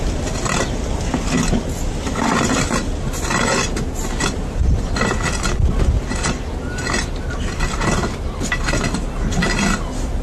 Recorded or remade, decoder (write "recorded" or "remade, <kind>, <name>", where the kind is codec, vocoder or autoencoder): recorded